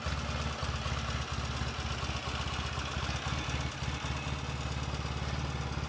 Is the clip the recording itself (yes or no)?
yes